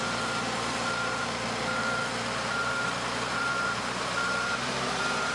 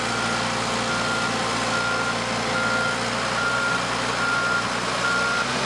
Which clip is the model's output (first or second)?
first